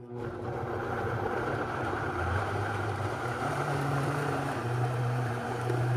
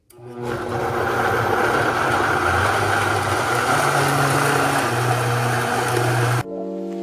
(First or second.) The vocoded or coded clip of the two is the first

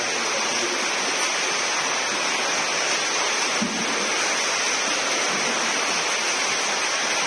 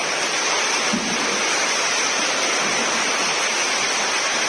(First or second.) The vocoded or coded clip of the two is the second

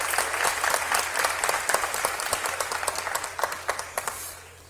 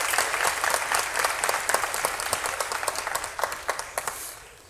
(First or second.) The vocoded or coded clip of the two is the second